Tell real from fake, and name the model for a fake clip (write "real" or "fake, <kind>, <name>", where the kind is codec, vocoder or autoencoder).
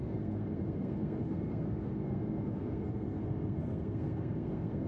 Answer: fake, codec, SNAC